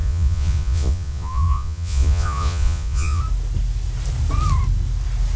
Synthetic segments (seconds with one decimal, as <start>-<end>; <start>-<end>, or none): 0.0-3.2